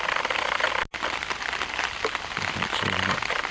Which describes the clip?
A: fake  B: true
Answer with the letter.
B